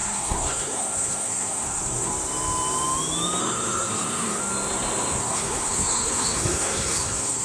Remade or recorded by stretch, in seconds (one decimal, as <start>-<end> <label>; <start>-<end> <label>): 0.0-2.1 remade; 2.1-3.4 recorded; 3.4-4.4 remade; 4.4-5.2 recorded; 5.2-7.4 remade